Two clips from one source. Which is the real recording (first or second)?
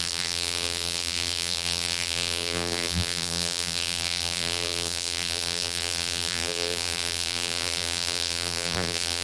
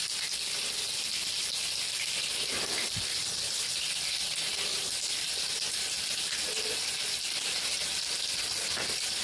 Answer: second